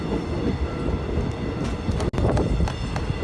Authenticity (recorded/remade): recorded